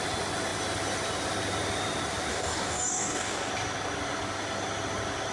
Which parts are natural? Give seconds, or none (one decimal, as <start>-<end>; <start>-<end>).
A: 0.0-2.3; 3.5-5.3